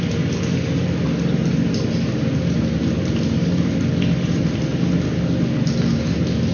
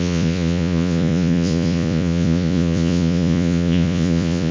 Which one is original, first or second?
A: first